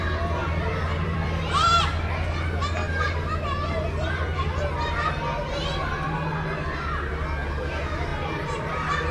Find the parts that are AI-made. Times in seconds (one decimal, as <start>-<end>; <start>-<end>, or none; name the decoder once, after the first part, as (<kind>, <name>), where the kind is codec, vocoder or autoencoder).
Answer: 0.4-2.1 (vocoder, BigVGAN v2); 8.1-8.7